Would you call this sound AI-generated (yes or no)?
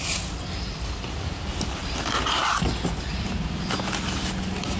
no